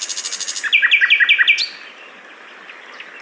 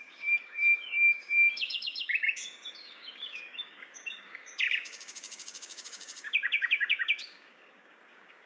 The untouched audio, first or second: first